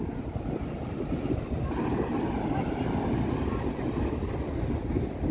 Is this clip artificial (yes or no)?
no